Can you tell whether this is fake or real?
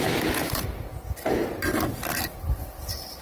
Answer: real